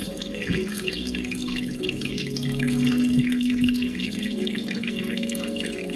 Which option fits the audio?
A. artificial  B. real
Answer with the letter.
A